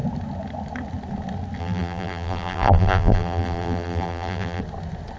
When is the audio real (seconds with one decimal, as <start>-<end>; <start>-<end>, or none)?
0.0-1.6; 4.6-5.2